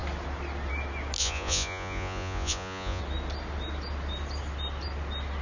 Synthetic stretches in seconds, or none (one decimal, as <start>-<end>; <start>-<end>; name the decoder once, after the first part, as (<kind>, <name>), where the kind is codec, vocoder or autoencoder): 1.2-3.0 (vocoder, Vocos)